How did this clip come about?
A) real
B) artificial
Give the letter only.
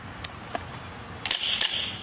A